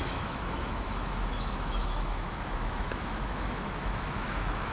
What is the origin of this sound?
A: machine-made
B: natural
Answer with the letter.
A